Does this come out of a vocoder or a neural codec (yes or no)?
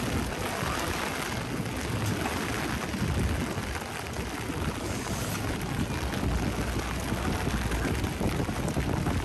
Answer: no